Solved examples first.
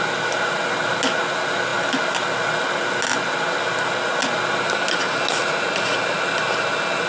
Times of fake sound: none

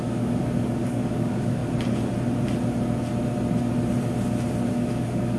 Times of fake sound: 0.0-1.6 (codec, DAC); 4.7-5.4

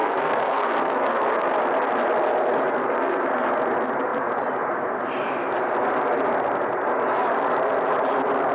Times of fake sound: 0.0-1.6 (codec, SNAC); 2.8-3.5

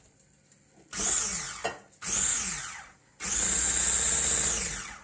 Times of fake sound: none